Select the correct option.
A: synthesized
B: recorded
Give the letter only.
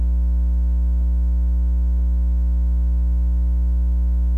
B